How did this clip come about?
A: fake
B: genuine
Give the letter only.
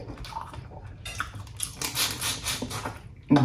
B